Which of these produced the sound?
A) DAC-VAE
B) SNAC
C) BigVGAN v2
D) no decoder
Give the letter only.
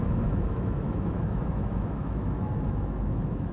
A